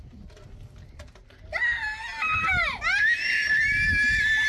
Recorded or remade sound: recorded